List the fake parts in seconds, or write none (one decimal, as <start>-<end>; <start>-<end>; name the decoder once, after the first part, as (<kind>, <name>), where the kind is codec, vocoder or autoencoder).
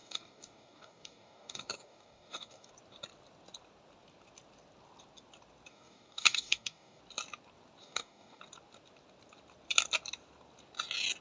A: 0.0-2.7 (codec, DAC); 5.7-7.0; 7.8-8.4